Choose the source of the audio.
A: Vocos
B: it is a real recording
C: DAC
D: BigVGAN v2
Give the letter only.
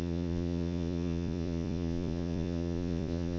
A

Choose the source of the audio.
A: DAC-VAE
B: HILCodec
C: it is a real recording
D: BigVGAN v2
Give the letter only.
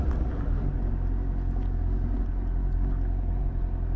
C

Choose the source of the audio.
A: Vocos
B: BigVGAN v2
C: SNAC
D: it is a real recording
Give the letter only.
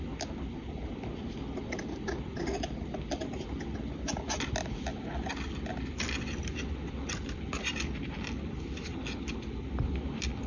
D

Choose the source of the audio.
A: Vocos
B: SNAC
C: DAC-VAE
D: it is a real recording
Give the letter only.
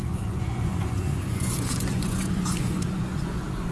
A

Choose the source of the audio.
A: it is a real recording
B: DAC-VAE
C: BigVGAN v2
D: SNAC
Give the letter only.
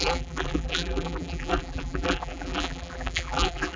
C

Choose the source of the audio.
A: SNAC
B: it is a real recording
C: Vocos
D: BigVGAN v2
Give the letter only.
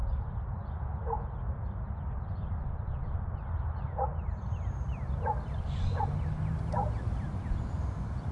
B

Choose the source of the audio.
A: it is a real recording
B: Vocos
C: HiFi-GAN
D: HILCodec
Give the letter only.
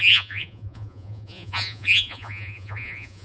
B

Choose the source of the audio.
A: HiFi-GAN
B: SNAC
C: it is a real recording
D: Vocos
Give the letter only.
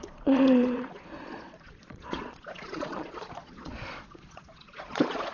D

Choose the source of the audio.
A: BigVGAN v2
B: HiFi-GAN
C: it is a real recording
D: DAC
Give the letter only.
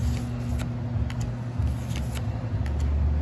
C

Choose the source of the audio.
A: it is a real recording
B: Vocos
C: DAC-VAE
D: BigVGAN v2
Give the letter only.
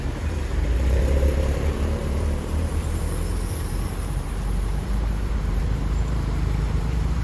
D